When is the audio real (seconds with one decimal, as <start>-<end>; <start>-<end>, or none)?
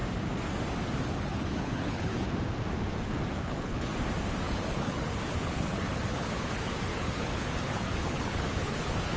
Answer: 0.0-1.0; 2.1-3.4; 3.9-4.5